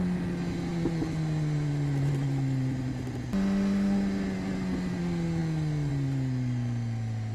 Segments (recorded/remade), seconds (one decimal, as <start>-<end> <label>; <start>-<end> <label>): 0.0-7.3 recorded